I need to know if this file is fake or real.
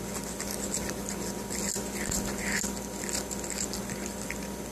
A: real